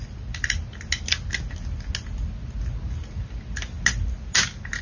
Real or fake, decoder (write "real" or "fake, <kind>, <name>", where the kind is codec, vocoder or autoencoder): real